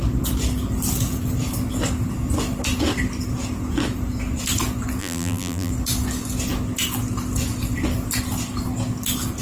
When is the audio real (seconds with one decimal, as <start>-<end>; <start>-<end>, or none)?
0.0-5.0; 5.7-9.4